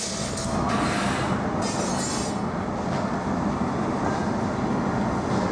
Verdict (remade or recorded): recorded